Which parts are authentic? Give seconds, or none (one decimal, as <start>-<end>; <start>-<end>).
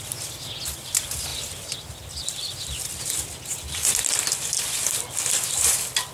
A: 0.0-1.3; 5.0-6.1